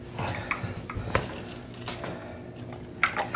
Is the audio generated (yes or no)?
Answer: no